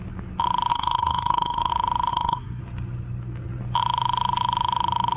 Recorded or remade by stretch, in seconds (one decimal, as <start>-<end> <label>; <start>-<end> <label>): 0.0-0.7 recorded; 0.7-1.7 remade; 1.7-2.1 recorded; 2.1-2.6 remade; 2.6-5.2 recorded